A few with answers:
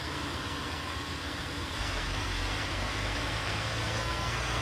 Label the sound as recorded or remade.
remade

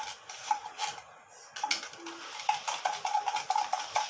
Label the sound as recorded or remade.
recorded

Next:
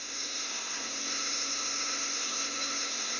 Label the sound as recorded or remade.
remade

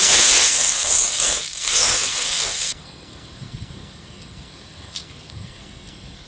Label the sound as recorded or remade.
remade